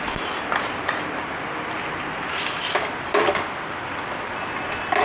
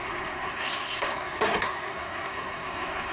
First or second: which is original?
first